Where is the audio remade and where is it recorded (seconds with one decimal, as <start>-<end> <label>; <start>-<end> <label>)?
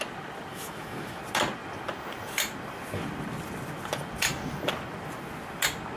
0.0-0.5 recorded; 0.5-1.2 remade; 1.2-6.0 recorded